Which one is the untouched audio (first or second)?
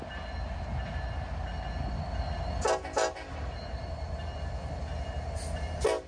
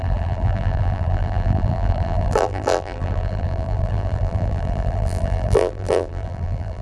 first